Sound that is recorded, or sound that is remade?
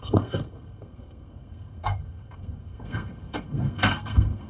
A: remade